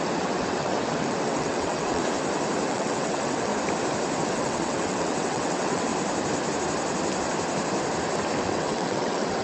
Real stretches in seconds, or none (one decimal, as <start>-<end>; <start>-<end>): 2.0-2.7; 3.5-4.2; 5.9-8.4